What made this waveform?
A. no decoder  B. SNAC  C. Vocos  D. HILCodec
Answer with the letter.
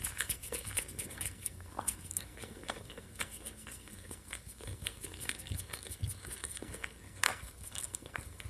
B